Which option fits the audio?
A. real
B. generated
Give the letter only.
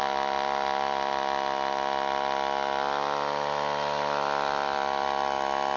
A